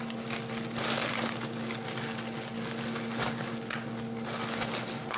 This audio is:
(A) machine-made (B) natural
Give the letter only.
B